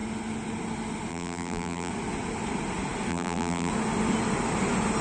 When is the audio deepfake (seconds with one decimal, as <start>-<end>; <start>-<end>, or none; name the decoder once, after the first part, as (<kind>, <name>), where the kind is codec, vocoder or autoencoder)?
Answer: 1.1-1.9 (vocoder, BigVGAN v2); 3.1-3.7